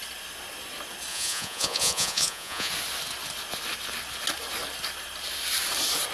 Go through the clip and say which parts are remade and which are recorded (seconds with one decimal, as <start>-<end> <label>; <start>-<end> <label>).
0.0-1.1 recorded; 1.1-2.7 remade; 2.7-6.1 recorded